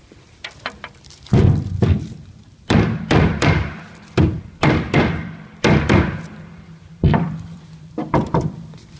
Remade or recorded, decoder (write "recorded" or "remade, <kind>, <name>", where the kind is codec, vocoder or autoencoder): remade, vocoder, BigVGAN v2